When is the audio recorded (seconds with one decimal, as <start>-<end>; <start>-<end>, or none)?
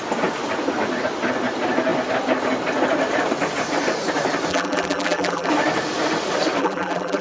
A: 0.0-4.5; 5.5-6.6